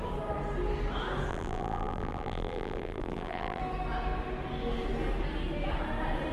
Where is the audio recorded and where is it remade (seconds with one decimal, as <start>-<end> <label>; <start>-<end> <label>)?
0.0-1.3 recorded; 1.3-3.6 remade; 3.6-6.3 recorded